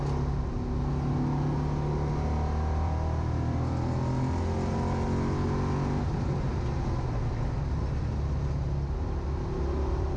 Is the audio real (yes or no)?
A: yes